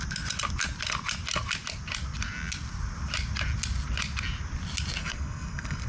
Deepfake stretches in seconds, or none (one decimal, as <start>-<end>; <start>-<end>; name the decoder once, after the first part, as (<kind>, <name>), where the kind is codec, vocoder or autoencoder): 5.0-5.9 (codec, SNAC)